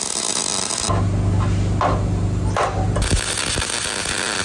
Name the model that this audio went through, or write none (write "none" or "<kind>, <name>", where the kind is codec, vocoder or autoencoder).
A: none